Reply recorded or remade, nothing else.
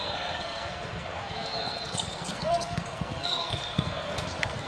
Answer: remade